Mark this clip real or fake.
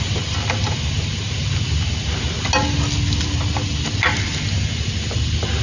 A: real